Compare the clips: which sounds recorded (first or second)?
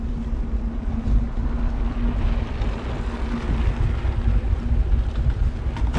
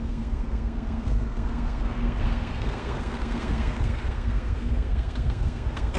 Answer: first